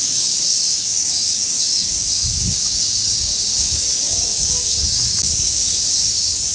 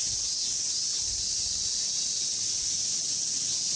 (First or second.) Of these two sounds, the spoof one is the first